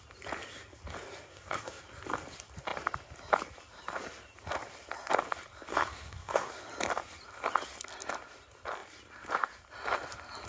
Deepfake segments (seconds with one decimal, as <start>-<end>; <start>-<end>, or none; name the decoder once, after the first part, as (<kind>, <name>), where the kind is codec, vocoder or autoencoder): 1.3-1.8 (codec, SNAC); 5.7-6.5